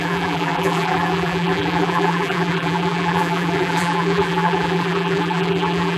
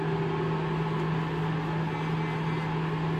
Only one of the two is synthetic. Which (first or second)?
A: first